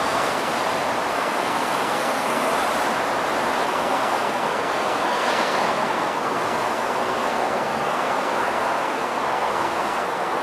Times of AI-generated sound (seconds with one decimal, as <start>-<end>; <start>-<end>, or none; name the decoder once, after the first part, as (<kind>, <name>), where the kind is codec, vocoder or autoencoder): 0.0-0.5 (codec, SNAC); 1.1-2.5; 3.6-10.4